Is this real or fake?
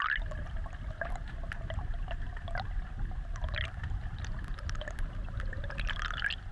real